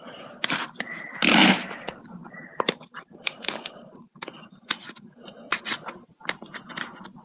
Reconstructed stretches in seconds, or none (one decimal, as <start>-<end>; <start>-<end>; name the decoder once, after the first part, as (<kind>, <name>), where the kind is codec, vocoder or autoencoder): 1.4-5.0 (vocoder, BigVGAN v2)